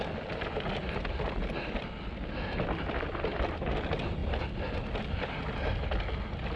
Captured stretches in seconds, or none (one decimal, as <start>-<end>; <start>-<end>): 0.0-6.6